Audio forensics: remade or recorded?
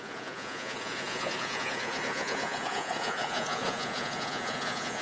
remade